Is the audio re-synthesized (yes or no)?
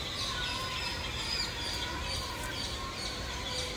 no